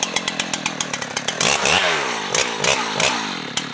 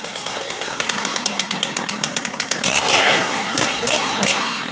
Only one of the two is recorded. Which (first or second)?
first